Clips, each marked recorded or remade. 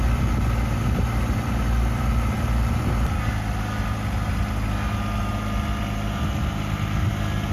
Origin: recorded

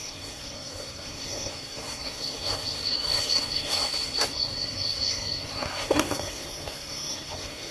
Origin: remade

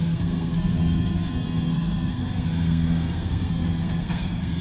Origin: remade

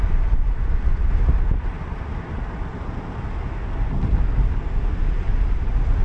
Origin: recorded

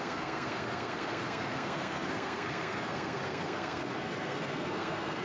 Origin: remade